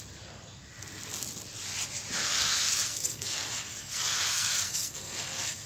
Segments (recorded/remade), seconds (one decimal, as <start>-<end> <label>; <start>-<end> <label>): 0.0-2.2 recorded; 2.2-5.7 remade